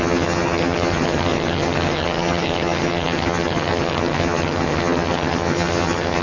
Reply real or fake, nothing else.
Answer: fake